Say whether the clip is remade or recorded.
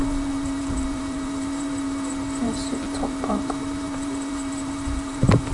remade